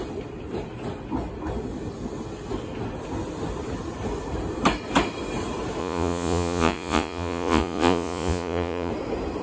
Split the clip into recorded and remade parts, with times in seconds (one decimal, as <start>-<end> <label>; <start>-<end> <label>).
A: 0.0-5.8 recorded; 5.8-8.9 remade; 8.9-9.4 recorded